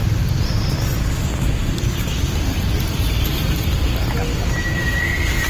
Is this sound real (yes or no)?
yes